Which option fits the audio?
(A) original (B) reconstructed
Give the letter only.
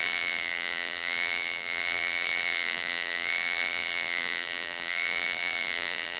B